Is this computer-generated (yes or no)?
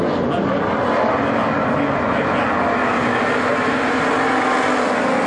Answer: no